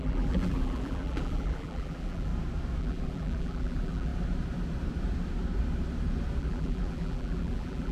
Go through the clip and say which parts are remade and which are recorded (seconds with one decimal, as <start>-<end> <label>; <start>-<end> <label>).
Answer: 0.0-2.3 remade; 2.3-2.8 recorded; 2.8-4.1 remade; 4.1-6.4 recorded; 6.4-7.9 remade